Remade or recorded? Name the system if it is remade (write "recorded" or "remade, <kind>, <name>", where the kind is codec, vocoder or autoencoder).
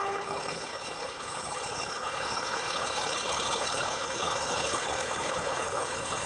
remade, codec, HILCodec